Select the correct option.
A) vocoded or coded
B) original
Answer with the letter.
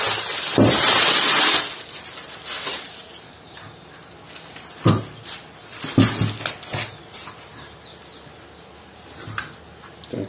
B